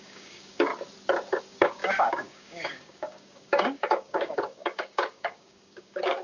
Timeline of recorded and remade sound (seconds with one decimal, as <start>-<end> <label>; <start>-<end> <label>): 0.0-0.7 remade; 0.7-1.3 recorded; 1.3-6.2 remade